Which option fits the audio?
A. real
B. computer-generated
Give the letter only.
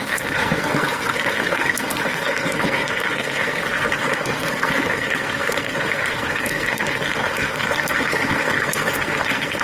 B